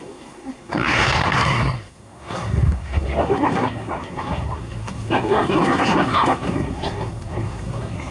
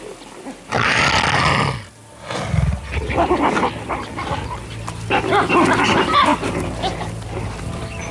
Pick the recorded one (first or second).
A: second